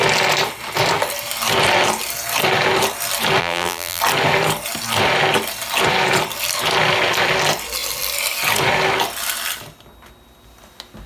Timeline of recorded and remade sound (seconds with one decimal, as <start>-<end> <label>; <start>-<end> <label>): 0.0-3.4 recorded; 3.4-4.0 remade; 4.0-11.1 recorded